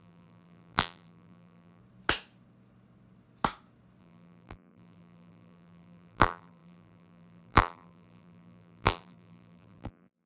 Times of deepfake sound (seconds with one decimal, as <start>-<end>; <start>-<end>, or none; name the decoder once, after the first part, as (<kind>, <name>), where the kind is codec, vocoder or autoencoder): 0.0-1.8 (vocoder, BigVGAN v2); 4.0-10.3